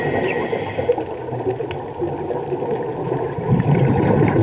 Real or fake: real